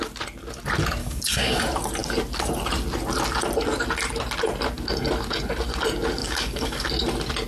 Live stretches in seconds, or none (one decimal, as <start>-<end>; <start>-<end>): 0.0-1.0; 1.6-6.2; 6.9-7.5